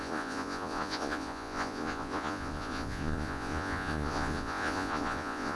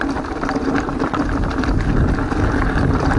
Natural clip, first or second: second